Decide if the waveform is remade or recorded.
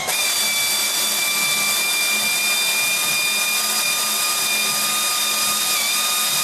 recorded